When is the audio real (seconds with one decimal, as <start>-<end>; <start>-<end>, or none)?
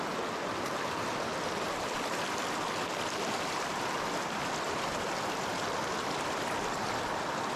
0.0-7.6